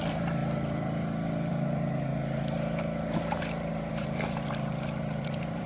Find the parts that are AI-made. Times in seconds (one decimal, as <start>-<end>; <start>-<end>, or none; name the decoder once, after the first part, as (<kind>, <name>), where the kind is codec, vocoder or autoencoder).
0.0-0.4 (vocoder, BigVGAN v2); 1.5-2.1; 3.9-5.7